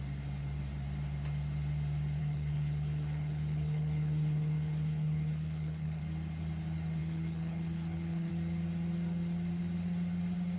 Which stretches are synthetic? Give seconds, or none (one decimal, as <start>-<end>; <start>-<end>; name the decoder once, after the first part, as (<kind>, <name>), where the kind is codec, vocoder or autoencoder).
2.2-6.0 (codec, HILCodec); 7.0-8.3

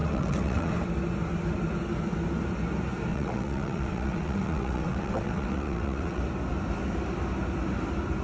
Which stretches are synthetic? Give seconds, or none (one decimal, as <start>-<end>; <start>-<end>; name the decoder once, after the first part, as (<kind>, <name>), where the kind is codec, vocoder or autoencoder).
0.0-0.7 (vocoder, WaveNeXt); 3.1-6.2

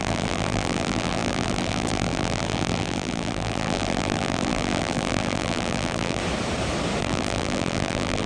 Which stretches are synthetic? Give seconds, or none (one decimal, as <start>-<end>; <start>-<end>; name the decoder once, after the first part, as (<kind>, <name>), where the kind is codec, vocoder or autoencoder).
0.0-6.2 (vocoder, BigVGAN v2); 7.0-8.3

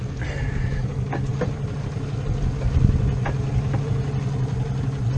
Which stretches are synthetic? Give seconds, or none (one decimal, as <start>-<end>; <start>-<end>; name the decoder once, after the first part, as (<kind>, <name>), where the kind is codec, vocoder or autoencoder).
none